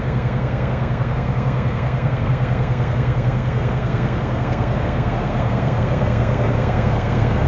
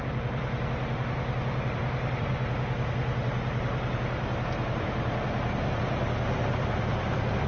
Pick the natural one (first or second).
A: second